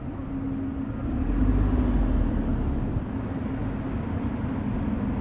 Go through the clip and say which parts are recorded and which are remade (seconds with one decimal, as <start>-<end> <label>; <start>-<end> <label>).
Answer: 0.0-5.2 recorded